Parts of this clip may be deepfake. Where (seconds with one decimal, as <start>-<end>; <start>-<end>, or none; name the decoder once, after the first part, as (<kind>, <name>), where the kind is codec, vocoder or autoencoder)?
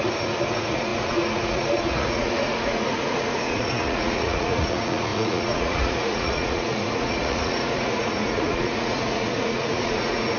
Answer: 0.0-10.4 (vocoder, Vocos)